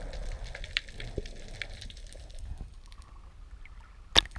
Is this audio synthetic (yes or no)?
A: no